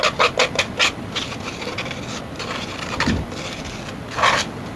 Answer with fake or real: real